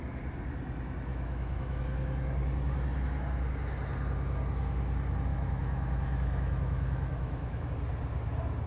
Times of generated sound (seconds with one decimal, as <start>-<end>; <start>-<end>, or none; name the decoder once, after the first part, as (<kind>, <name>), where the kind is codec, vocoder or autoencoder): 1.1-1.8 (autoencoder, DAC-VAE); 5.3-7.7